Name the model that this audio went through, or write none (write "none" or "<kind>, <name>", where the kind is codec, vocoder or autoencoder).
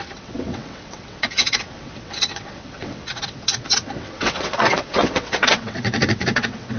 vocoder, WaveNeXt